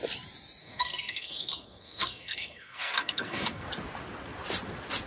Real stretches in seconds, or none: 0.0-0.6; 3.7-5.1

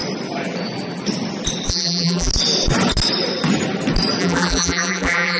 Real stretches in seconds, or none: 0.0-1.7; 2.3-4.2

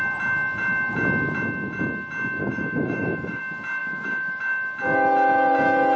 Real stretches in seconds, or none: 0.0-2.4; 3.4-3.8; 4.4-6.0

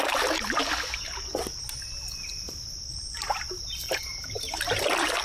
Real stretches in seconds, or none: 0.6-2.3

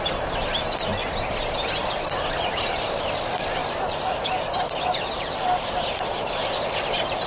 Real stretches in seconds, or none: 0.0-3.6; 6.2-7.3

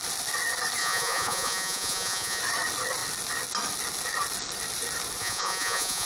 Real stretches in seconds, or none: 0.0-0.8; 2.4-5.2

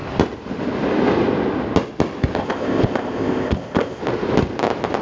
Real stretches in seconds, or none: 0.0-2.4; 4.0-5.0

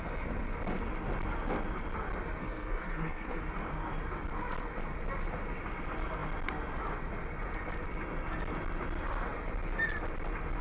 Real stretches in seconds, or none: 0.0-2.4; 3.4-10.6